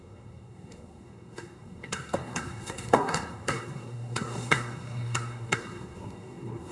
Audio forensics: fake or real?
fake